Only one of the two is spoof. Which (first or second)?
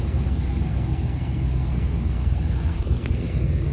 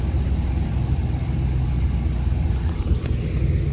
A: first